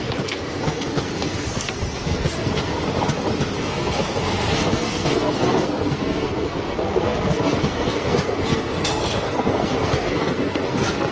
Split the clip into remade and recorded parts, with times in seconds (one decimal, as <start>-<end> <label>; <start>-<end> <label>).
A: 0.0-2.8 remade; 2.8-3.6 recorded; 3.6-11.1 remade